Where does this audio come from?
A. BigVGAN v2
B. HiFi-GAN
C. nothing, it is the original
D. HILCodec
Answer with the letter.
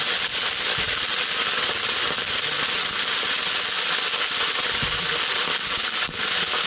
C